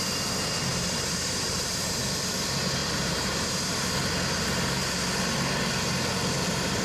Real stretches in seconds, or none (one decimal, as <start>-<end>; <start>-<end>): 0.0-0.7; 2.0-2.8; 3.9-6.8